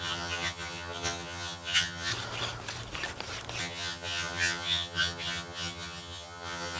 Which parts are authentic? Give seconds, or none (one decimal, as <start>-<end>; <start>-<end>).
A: 2.1-3.6